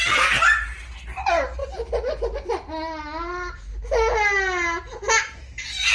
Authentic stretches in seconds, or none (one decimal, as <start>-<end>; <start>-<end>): 0.0-5.9